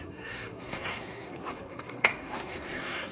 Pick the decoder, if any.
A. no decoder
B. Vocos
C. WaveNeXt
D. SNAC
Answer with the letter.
D